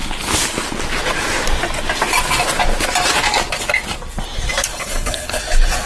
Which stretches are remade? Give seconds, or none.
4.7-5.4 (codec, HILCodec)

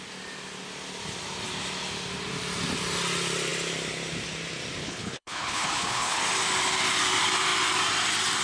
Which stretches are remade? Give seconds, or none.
4.8-6.2 (codec, HILCodec)

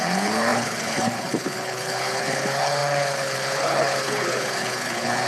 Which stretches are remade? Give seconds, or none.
0.0-5.3 (codec, HILCodec)

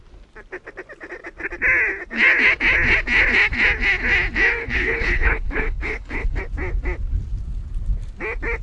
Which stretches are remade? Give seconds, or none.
4.6-6.4 (codec, HILCodec)

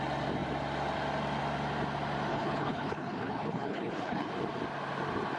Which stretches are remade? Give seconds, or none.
2.3-4.3 (codec, HILCodec)